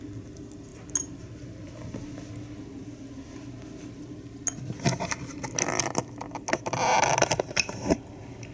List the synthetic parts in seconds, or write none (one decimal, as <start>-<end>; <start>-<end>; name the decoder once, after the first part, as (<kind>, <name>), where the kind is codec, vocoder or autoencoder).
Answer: none